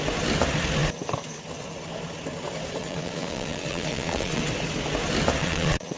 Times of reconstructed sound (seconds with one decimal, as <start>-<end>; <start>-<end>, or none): 2.8-4.4; 5.4-6.0